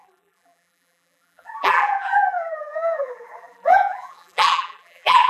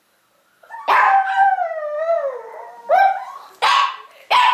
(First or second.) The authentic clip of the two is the second